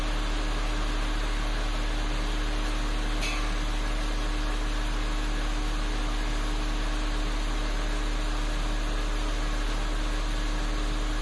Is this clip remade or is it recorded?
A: recorded